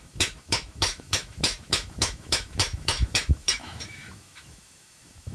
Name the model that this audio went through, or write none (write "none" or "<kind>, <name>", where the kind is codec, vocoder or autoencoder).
autoencoder, DAC-VAE